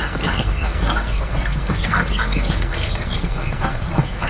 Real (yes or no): no